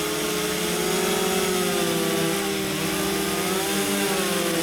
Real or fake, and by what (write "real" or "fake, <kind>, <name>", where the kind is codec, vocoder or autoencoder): real